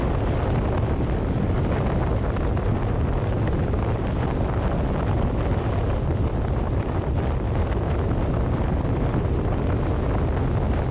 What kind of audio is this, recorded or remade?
recorded